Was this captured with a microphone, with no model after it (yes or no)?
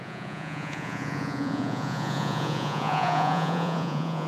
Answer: no